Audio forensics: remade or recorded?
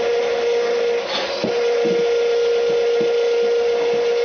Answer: recorded